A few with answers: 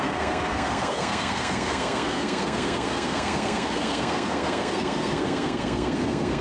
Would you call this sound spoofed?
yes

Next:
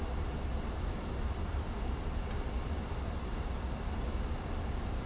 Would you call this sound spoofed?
no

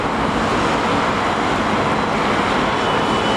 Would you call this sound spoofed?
no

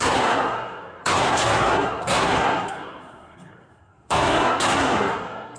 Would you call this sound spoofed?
yes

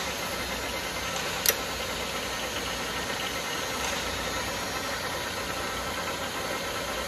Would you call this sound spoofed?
no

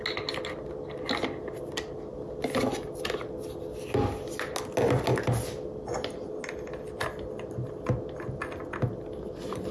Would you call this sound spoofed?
no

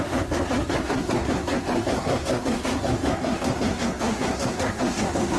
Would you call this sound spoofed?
yes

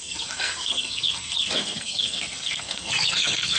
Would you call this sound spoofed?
yes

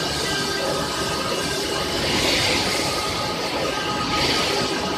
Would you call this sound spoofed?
no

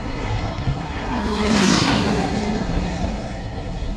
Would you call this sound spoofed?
yes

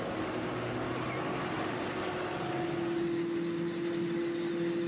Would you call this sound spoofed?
no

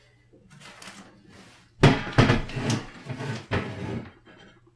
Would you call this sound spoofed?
no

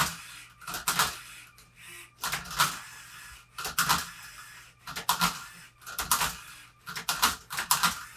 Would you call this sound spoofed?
no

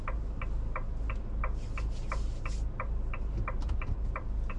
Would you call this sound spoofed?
no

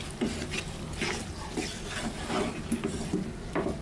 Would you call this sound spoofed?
no